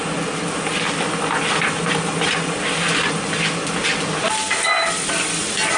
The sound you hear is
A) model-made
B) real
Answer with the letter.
B